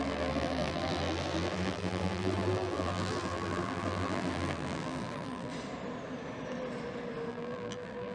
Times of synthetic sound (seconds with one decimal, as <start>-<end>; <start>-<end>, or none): 0.0-5.5; 7.3-8.1